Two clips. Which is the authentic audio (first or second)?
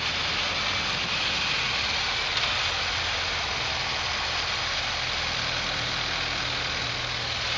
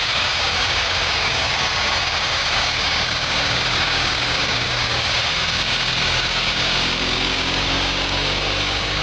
first